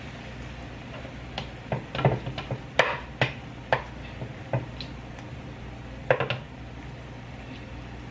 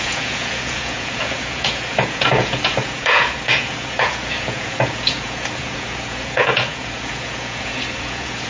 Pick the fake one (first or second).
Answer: second